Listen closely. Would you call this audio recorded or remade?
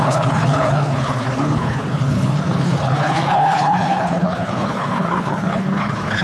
remade